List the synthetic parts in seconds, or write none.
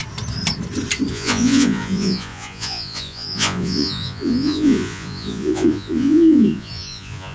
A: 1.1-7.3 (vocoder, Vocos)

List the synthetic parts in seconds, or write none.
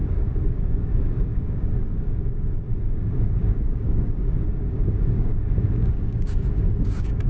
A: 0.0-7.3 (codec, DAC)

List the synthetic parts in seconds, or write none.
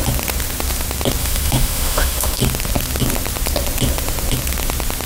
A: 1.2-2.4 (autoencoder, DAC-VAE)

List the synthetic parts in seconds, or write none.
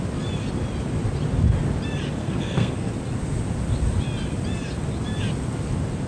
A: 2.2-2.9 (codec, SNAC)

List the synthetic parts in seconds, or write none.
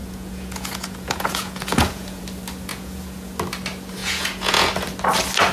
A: 0.0-2.2 (vocoder, Vocos); 2.7-3.3; 4.0-4.7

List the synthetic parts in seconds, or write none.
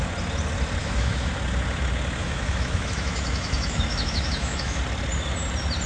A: 0.8-1.3 (autoencoder, DAC-VAE); 2.2-4.8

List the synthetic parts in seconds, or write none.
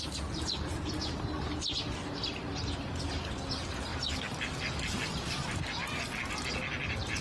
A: none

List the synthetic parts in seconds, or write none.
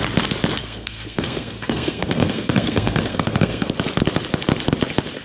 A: 0.6-3.7 (codec, SNAC)